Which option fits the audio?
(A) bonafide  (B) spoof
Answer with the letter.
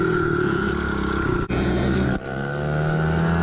A